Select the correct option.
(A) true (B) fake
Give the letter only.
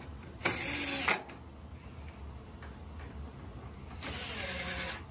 A